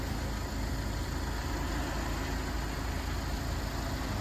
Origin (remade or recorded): recorded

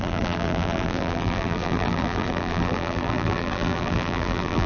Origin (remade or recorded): remade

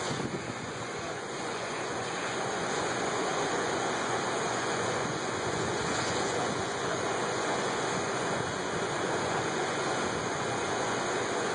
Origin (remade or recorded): remade